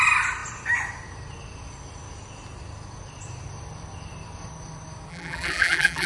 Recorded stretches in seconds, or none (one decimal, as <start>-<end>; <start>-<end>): 0.0-5.1